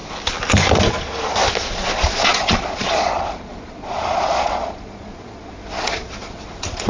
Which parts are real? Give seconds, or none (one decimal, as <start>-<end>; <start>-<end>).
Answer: 0.0-1.7